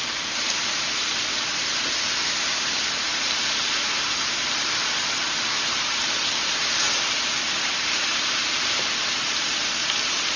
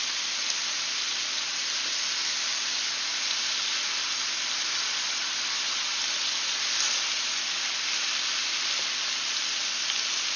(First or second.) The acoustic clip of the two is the second